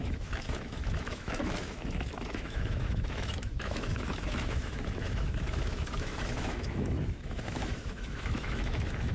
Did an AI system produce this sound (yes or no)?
yes